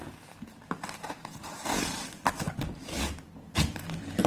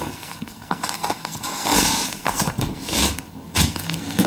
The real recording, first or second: first